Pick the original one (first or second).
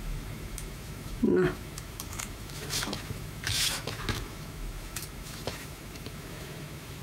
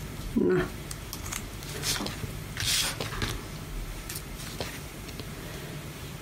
second